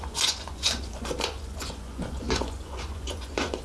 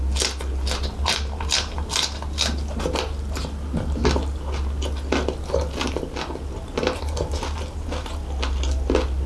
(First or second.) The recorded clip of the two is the second